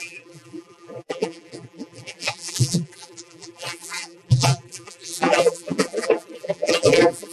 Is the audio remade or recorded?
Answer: remade